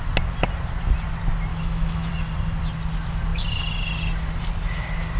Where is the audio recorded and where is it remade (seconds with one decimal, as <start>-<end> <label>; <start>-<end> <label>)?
0.0-1.5 recorded; 1.5-2.1 remade; 2.1-5.2 recorded